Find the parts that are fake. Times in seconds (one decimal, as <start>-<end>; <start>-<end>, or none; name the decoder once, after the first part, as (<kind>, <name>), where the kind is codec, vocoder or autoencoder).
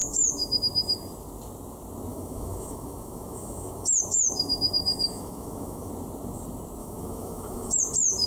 0.0-0.6 (autoencoder, DAC-VAE); 2.1-5.9; 6.8-7.8